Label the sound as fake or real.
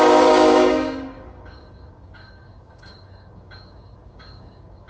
fake